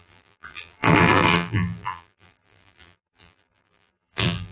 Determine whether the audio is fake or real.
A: fake